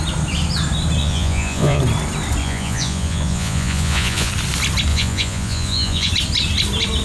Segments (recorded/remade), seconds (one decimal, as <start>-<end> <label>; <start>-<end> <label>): 0.0-1.0 recorded; 1.0-1.8 remade; 1.8-2.4 recorded; 2.4-4.3 remade; 4.3-4.9 recorded; 4.9-6.1 remade; 6.1-7.0 recorded